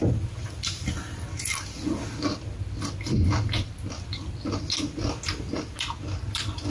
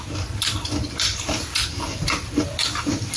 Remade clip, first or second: second